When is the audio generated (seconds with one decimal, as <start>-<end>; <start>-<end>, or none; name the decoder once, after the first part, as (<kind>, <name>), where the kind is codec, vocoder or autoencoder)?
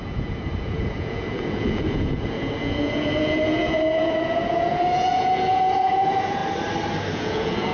0.0-6.4 (vocoder, Vocos); 7.1-7.7